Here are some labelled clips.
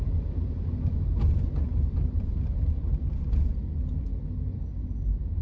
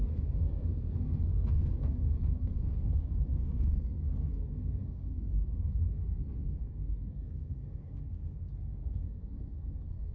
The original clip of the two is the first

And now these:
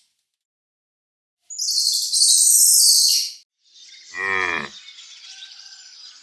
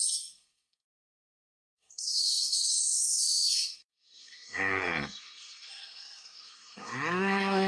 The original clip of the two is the first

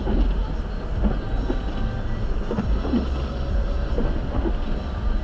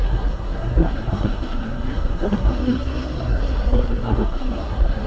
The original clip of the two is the first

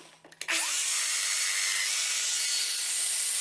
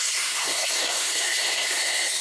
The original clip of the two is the first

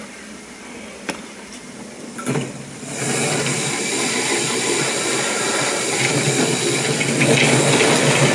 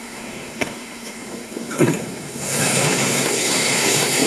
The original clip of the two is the first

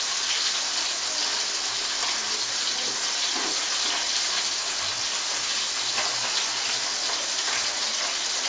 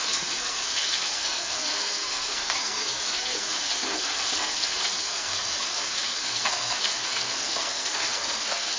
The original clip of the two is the first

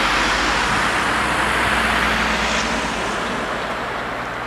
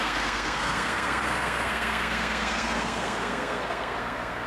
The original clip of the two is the first